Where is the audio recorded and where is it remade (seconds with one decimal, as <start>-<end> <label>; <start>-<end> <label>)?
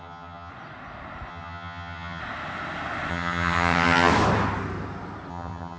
0.0-0.5 remade; 0.5-1.3 recorded; 1.3-2.2 remade; 2.2-3.1 recorded; 3.1-4.1 remade; 4.1-5.3 recorded; 5.3-5.8 remade